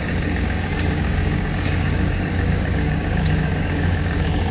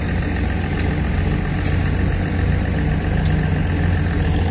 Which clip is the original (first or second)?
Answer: second